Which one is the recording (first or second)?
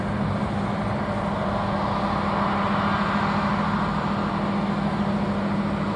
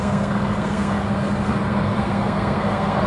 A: first